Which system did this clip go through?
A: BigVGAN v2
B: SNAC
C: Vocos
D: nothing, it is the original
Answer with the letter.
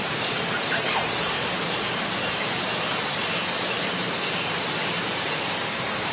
A